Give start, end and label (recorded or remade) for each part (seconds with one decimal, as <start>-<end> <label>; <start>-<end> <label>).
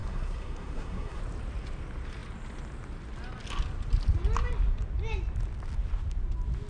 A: 0.0-1.2 remade; 1.2-6.7 recorded